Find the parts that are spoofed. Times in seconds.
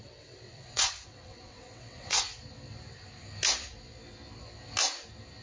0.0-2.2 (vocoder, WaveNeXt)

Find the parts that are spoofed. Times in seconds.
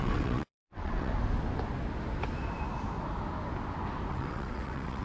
0.0-1.1 (vocoder, WaveNeXt); 4.1-5.0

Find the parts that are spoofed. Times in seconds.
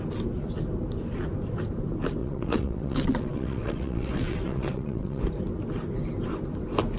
2.2-5.2 (vocoder, WaveNeXt)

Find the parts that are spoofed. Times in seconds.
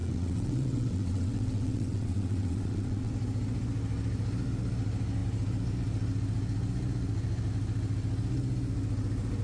0.0-3.1 (vocoder, WaveNeXt)